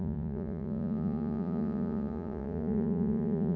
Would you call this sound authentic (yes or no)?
no